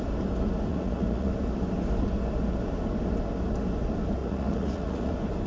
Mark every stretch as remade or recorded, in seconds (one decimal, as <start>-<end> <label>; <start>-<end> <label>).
0.0-0.7 recorded; 0.7-1.3 remade; 1.3-4.2 recorded; 4.2-5.1 remade; 5.1-5.5 recorded